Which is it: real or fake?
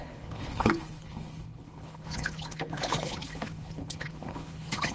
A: fake